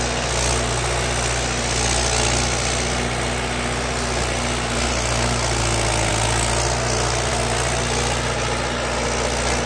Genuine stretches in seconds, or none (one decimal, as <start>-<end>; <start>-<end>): 0.0-9.7